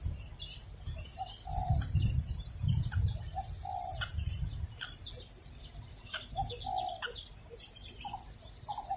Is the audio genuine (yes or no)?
yes